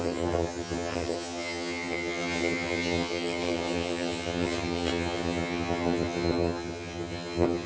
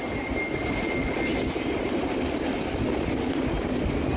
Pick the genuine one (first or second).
second